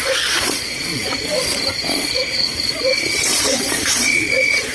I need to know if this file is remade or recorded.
remade